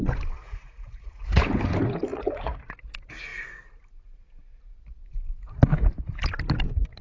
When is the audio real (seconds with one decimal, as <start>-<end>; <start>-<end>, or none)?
0.0-0.4; 1.4-2.1; 2.7-7.0